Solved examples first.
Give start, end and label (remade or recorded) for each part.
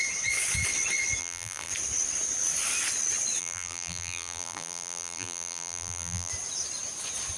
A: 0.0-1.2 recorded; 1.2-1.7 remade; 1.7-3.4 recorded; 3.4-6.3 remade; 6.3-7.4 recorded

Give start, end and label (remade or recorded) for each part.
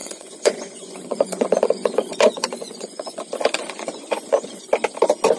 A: 0.0-3.2 remade; 3.2-3.6 recorded; 3.6-4.7 remade; 4.7-5.4 recorded